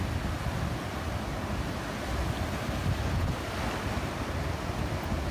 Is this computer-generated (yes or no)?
no